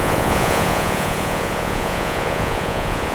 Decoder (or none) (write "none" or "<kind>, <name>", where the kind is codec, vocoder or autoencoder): vocoder, Vocos